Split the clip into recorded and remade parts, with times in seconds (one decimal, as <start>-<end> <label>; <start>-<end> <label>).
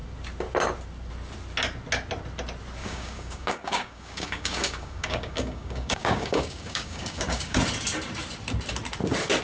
0.0-2.8 recorded; 2.8-7.6 remade; 7.6-9.4 recorded